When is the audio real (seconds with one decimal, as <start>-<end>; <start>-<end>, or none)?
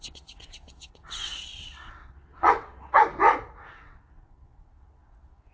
3.0-3.7